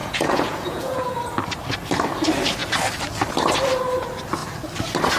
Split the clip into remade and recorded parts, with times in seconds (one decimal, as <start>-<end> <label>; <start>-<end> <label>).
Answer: 0.0-1.2 remade; 1.2-5.2 recorded